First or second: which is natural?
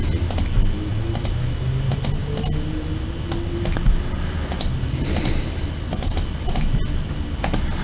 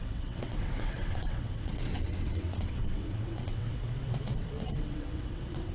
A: first